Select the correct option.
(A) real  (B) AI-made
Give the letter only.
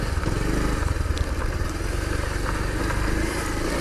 A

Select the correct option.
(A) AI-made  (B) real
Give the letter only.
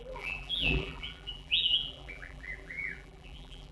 A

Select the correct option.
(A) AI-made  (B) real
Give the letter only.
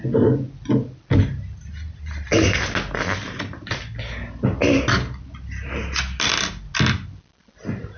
B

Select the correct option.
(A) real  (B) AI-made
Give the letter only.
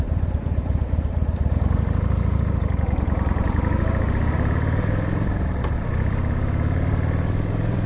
B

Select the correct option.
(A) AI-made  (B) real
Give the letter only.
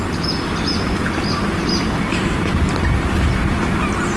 A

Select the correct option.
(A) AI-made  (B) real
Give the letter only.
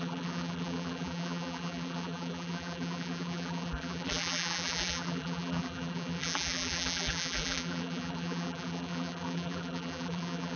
A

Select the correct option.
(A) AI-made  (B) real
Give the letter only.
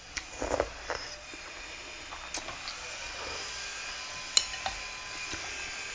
B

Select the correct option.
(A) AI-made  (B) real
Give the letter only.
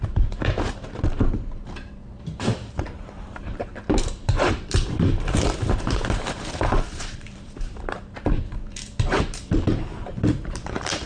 A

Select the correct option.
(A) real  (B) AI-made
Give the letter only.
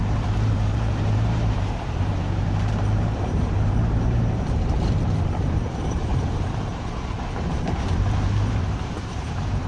B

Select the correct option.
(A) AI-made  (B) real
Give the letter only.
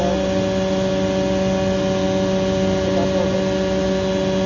B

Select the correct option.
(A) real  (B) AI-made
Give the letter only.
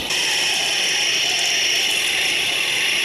A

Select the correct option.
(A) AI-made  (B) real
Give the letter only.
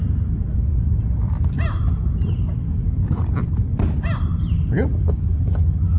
B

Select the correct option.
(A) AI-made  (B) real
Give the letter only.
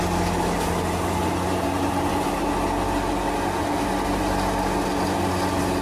B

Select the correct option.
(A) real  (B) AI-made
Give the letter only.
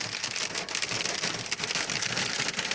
A